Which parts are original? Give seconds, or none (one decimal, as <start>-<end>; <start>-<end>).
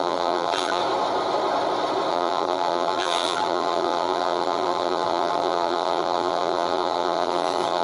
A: 0.8-2.1